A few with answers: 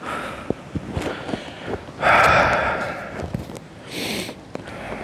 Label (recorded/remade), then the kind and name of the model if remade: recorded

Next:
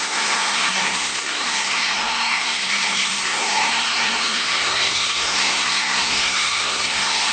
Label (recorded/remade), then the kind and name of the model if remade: remade, codec, SNAC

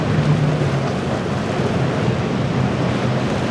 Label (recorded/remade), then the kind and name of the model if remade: recorded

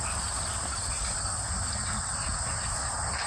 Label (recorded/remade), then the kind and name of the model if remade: recorded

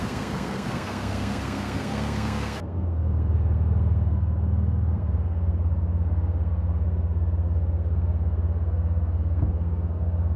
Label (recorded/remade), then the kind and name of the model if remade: remade, codec, SNAC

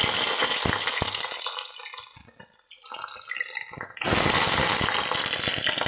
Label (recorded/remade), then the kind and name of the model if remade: recorded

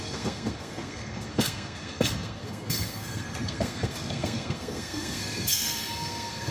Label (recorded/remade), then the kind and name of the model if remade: remade, codec, SNAC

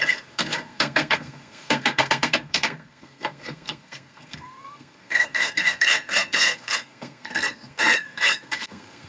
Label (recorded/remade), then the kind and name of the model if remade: remade, codec, SNAC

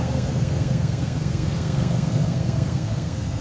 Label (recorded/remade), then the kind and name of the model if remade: remade, codec, SNAC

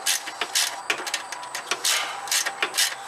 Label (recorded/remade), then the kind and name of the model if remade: recorded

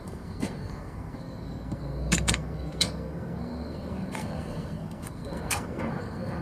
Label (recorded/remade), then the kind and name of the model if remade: remade, codec, SNAC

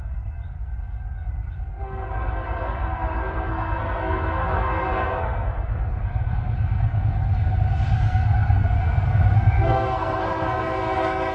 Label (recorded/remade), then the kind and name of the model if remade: remade, codec, SNAC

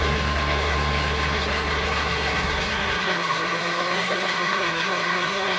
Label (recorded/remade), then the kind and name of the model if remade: remade, codec, SNAC